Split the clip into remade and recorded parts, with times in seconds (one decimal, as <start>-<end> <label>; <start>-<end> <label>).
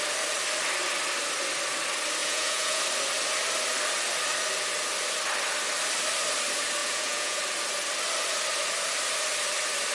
0.0-2.2 recorded; 2.2-2.8 remade; 2.8-6.8 recorded; 6.8-7.4 remade; 7.4-9.9 recorded